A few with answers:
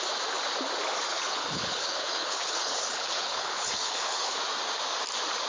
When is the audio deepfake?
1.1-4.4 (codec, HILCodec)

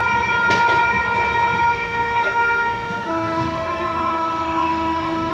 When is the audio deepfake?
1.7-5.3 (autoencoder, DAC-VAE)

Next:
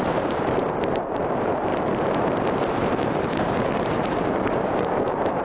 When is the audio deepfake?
0.0-1.7 (vocoder, BigVGAN v2); 3.1-5.4

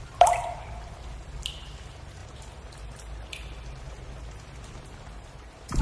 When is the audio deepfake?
0.0-2.2 (vocoder, BigVGAN v2); 4.8-5.8

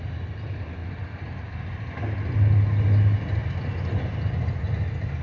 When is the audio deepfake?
none

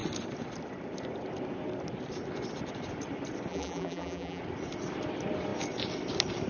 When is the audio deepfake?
3.5-4.4 (vocoder, BigVGAN v2)

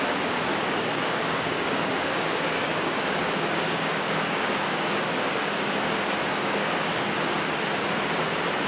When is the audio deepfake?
0.5-5.7 (codec, DAC); 6.4-7.1

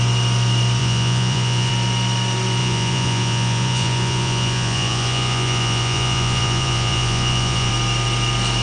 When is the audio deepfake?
0.8-1.7 (vocoder, Vocos); 2.6-7.7